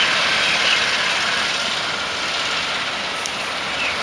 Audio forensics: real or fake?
real